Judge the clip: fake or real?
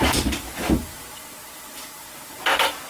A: real